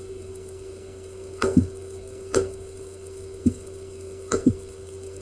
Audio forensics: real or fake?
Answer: fake